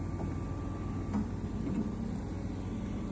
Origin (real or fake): real